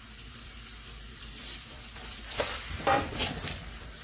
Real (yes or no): no